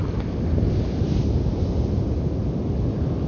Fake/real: real